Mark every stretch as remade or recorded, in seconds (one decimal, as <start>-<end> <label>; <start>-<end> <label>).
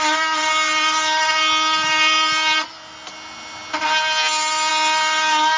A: 0.0-5.6 recorded